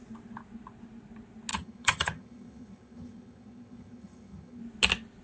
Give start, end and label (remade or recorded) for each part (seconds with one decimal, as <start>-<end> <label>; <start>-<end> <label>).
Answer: 0.0-1.5 recorded; 1.5-4.6 remade; 4.6-5.2 recorded